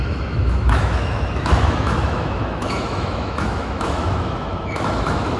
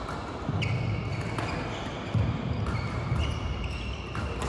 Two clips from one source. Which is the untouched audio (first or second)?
second